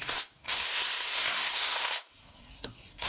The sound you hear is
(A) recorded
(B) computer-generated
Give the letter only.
B